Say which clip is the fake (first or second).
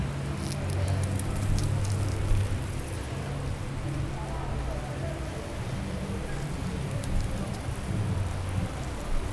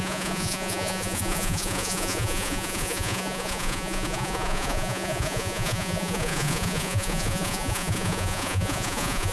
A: second